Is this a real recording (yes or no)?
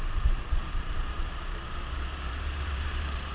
no